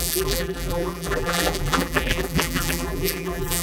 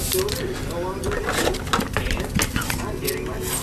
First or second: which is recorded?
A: second